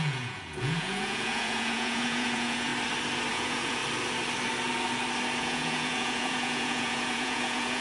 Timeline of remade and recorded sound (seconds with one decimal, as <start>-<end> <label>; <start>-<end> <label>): 0.0-2.7 remade; 2.7-3.3 recorded; 3.3-3.8 remade; 3.8-5.4 recorded; 5.4-7.8 remade